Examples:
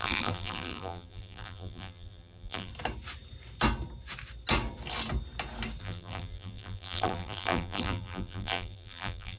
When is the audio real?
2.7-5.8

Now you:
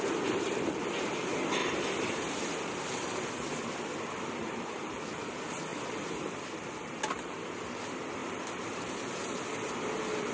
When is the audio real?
0.0-1.6; 3.3-4.4; 5.3-5.7; 7.6-8.2; 8.9-10.3

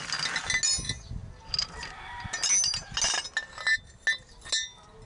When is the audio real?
0.0-5.1

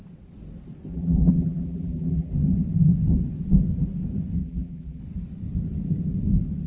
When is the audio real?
0.0-0.9; 2.3-4.4; 5.0-6.7